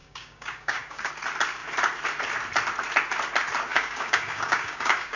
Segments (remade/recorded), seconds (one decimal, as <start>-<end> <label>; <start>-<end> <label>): 0.0-1.1 remade; 1.1-3.7 recorded; 3.7-5.2 remade